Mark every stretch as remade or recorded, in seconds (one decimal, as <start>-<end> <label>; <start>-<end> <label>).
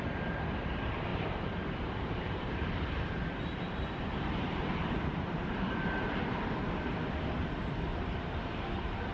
0.0-1.1 recorded; 1.1-6.4 remade; 6.4-7.9 recorded; 7.9-8.6 remade; 8.6-9.1 recorded